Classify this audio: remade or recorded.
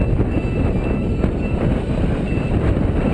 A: recorded